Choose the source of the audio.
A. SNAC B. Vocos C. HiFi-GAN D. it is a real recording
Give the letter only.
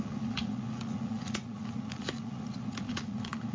B